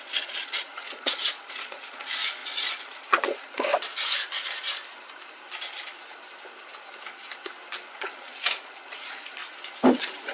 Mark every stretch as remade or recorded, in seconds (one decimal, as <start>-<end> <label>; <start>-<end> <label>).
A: 0.0-3.7 remade; 3.7-7.9 recorded; 7.9-9.4 remade; 9.4-9.9 recorded; 9.9-10.3 remade